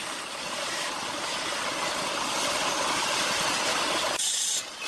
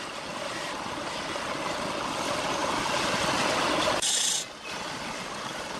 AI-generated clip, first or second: first